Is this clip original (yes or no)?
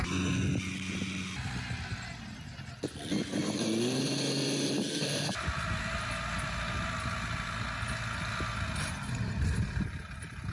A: yes